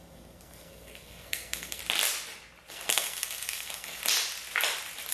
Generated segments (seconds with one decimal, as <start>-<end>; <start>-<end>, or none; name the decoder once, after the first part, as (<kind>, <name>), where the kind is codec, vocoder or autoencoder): 0.0-1.8 (codec, SNAC); 2.7-4.0